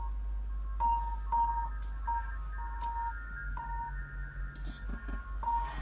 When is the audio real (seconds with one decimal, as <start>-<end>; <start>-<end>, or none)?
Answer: 0.0-5.8